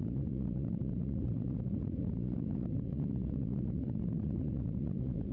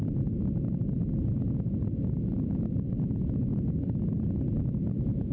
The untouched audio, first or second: second